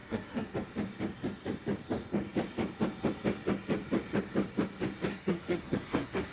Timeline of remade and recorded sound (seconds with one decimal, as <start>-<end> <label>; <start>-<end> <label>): 0.0-0.5 remade; 0.5-5.1 recorded; 5.1-6.3 remade